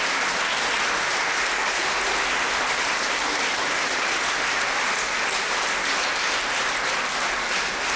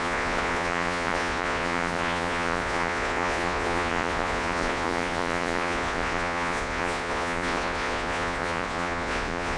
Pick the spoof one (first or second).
second